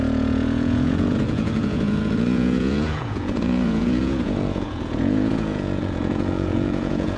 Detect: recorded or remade remade